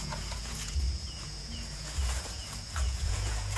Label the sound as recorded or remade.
remade